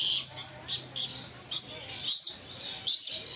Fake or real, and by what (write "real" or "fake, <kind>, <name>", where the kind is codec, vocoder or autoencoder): real